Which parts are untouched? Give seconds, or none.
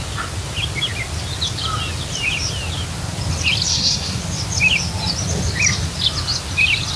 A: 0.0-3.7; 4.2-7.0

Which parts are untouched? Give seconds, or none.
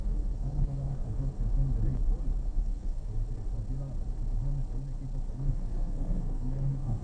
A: 1.3-2.4; 3.1-5.3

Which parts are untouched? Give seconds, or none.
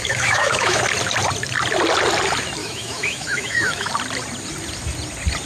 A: 0.8-2.6; 3.9-5.5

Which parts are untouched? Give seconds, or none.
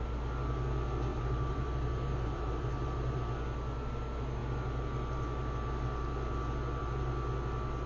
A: 0.0-1.1; 3.2-7.9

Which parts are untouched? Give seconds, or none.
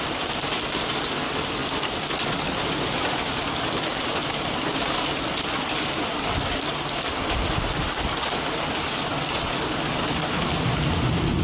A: 0.0-11.4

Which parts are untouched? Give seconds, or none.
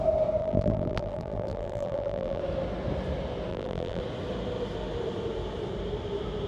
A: 0.0-0.4; 2.4-3.5; 4.0-6.5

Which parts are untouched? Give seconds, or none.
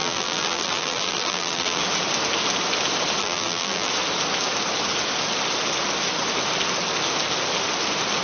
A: 1.8-3.2; 3.9-8.2